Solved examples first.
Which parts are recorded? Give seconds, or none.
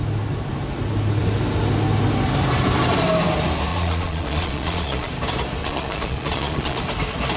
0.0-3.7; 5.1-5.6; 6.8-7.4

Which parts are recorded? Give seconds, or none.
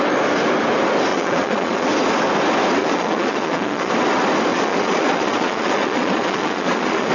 0.0-1.1; 1.9-2.8; 3.9-4.5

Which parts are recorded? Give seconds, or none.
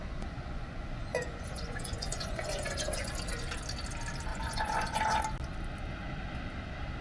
3.1-4.3; 5.2-7.0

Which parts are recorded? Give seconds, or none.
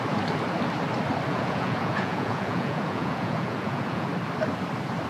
0.0-1.3; 4.1-5.1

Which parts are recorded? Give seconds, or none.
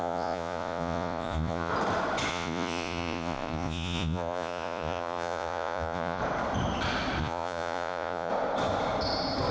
1.7-2.3; 6.2-7.2; 8.3-9.5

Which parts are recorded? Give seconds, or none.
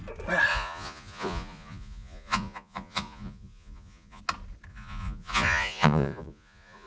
0.0-0.5; 4.2-4.7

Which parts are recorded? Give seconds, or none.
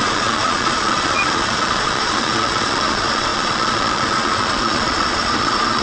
none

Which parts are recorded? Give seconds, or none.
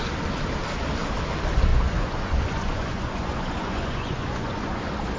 0.0-1.7; 4.8-5.2